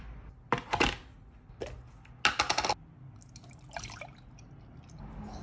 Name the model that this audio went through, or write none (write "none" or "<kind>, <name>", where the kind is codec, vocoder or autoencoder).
none